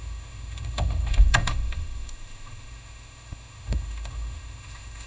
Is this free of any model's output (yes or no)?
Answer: no